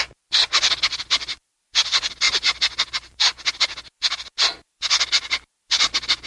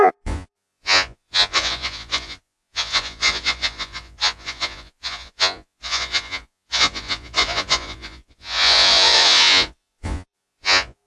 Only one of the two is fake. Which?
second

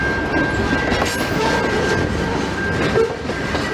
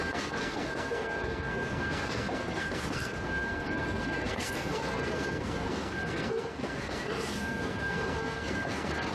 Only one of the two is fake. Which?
second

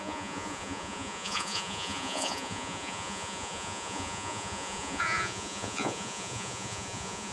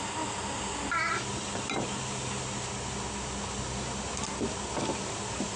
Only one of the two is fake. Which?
first